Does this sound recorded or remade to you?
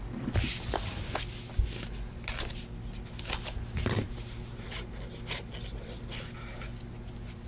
recorded